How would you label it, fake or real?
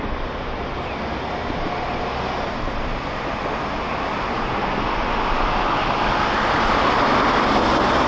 real